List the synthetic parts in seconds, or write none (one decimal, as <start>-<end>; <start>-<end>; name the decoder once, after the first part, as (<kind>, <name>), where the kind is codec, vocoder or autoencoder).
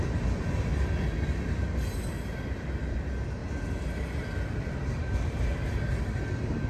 none